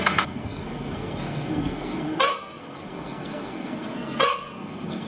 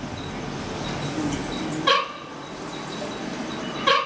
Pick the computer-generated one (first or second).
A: first